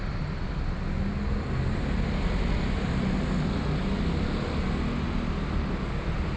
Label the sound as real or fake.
real